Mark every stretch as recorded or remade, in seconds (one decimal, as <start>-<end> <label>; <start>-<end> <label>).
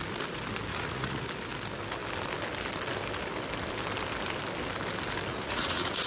0.0-0.7 recorded; 0.7-1.3 remade; 1.3-5.3 recorded; 5.3-6.1 remade